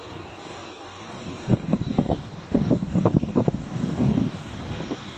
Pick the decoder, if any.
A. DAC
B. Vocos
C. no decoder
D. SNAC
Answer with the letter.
A